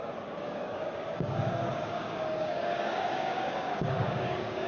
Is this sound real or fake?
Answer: fake